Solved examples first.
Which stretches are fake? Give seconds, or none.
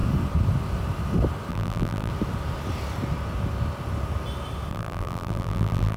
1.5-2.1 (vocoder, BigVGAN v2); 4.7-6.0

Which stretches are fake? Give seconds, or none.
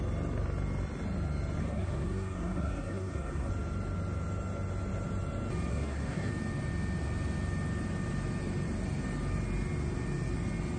1.6-3.5 (codec, SNAC); 5.7-6.3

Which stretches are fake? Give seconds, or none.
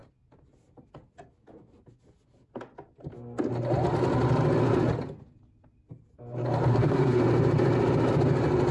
6.7-7.2 (codec, SNAC)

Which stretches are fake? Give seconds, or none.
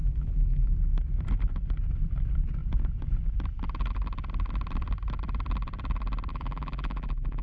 0.0-0.7 (vocoder, BigVGAN v2); 6.3-7.4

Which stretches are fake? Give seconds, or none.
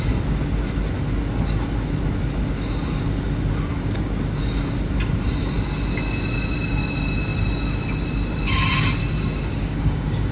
9.0-10.3 (codec, DAC)